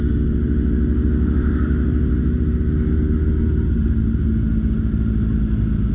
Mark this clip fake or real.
real